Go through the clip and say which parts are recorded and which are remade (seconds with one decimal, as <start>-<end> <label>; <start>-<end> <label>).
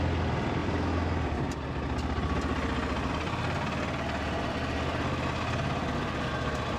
0.0-6.8 recorded